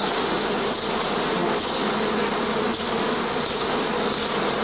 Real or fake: real